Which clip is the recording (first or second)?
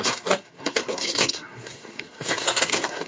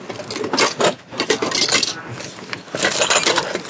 second